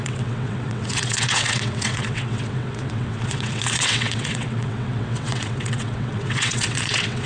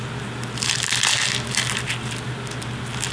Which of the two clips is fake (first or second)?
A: first